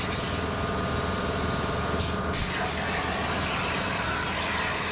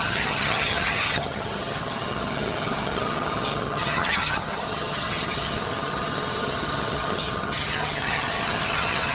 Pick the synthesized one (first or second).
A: second